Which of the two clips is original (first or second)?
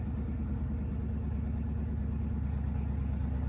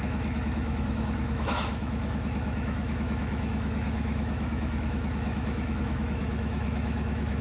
first